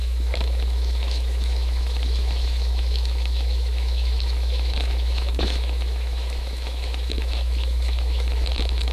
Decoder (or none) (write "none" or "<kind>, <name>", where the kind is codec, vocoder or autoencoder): autoencoder, DAC-VAE